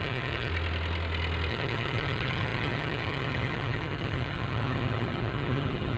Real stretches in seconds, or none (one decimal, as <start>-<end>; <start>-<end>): 0.5-1.5